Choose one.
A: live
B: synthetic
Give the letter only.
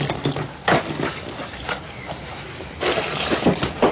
A